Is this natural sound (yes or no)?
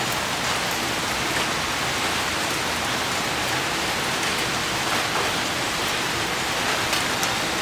yes